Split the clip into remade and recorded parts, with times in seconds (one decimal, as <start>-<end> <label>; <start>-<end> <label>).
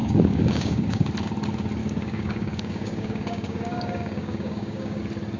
0.0-1.1 remade; 1.1-1.8 recorded; 1.8-5.0 remade; 5.0-5.4 recorded